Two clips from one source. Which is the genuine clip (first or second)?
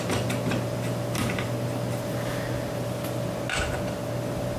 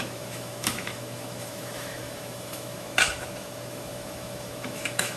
first